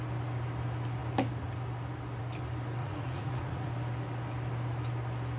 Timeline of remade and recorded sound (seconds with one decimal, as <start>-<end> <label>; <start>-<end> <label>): 0.0-2.8 recorded; 2.8-3.7 remade; 3.7-5.4 recorded